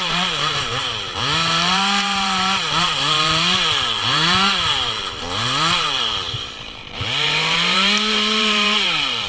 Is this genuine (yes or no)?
no